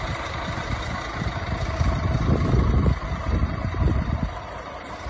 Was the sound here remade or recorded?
remade